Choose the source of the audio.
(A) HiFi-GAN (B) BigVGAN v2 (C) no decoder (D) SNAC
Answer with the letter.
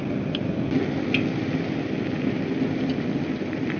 C